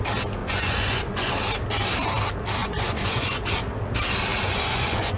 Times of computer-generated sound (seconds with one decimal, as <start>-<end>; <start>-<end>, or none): 0.4-1.3; 2.6-3.5; 4.3-5.2

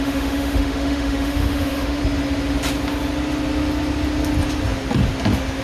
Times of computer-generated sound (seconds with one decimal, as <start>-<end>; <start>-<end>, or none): 0.0-2.0

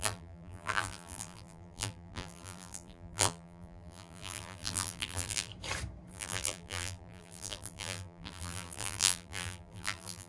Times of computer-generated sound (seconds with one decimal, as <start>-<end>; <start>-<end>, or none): 0.0-5.5; 6.1-10.3

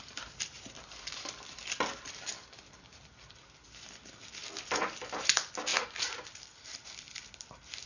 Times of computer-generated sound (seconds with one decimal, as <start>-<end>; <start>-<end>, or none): none